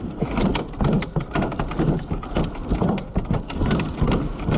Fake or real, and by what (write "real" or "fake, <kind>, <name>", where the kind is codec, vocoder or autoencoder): real